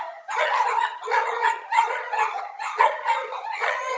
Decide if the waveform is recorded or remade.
remade